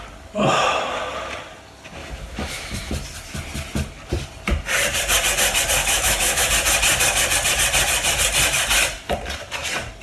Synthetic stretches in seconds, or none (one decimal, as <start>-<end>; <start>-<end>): 2.0-2.9; 5.8-6.5